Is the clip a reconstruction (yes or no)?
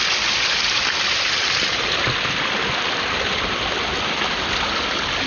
no